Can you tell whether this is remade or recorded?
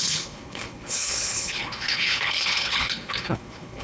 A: remade